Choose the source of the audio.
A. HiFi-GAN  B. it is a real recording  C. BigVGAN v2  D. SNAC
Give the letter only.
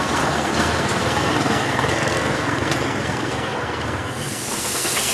D